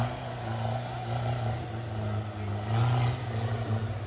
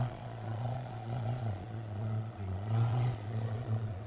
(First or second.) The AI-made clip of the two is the second